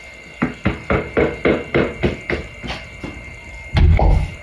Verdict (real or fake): real